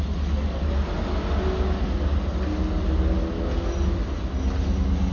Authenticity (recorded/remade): recorded